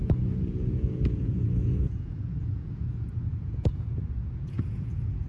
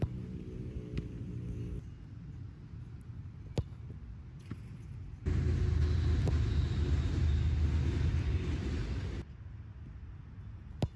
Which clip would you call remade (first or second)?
first